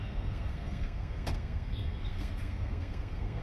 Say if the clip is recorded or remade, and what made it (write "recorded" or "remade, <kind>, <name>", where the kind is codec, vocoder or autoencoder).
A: remade, codec, SNAC